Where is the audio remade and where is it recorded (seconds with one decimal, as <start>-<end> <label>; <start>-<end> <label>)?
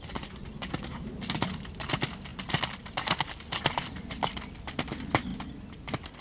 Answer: 0.0-6.2 recorded